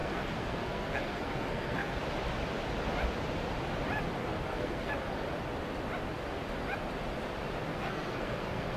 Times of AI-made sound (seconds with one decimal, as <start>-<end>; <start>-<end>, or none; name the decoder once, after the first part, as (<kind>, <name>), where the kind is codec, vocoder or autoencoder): 0.0-2.0 (codec, SNAC); 4.2-4.9; 7.7-8.8